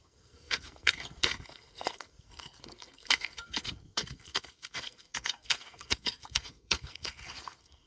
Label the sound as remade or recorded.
remade